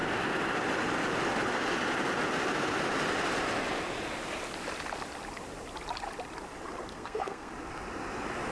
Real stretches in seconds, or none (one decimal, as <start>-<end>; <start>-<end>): 0.0-6.9; 7.5-8.5